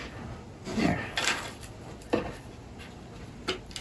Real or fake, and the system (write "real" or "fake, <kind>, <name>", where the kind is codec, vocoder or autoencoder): real